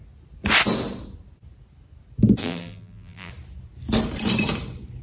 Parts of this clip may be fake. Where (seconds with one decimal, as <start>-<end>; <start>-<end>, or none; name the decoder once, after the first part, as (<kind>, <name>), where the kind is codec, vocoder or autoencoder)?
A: 2.4-3.3 (vocoder, BigVGAN v2)